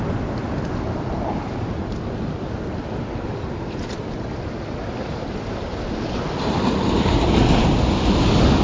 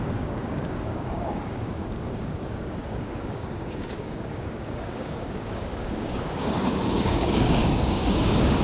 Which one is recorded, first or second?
first